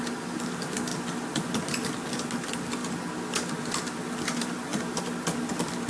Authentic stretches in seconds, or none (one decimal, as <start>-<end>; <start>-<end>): 0.0-5.9